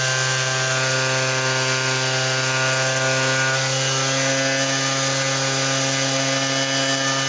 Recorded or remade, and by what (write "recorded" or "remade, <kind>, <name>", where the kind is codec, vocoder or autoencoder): recorded